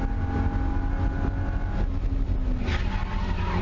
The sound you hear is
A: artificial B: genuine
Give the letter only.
B